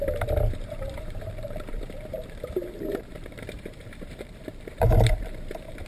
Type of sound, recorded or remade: remade